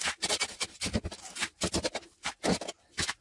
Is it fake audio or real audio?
real